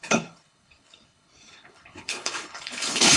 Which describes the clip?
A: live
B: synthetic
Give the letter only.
B